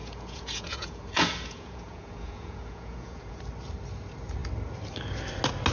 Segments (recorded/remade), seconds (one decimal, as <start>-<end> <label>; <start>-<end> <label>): 0.0-3.4 remade; 3.4-5.7 recorded